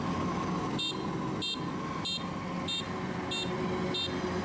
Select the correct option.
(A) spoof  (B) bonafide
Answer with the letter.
B